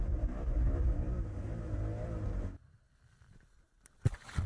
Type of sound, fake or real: real